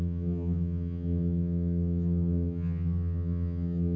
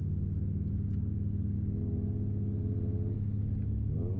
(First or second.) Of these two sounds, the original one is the second